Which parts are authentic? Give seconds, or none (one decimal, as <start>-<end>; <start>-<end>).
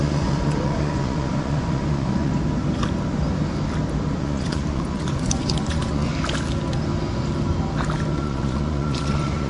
2.3-4.2; 6.1-8.1